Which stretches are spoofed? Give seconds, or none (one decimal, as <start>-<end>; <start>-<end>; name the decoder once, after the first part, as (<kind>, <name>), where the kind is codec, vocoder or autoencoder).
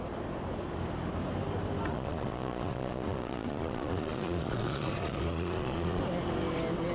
1.9-6.0 (vocoder, Vocos)